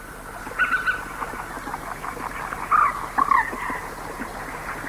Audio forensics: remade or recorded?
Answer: recorded